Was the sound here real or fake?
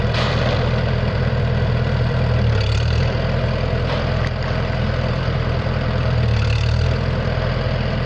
fake